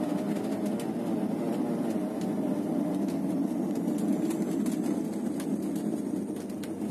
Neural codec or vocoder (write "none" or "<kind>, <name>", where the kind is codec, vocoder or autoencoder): none